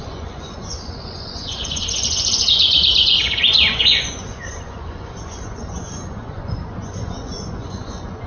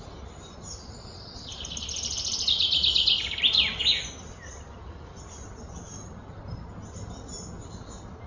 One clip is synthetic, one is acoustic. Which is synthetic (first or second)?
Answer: first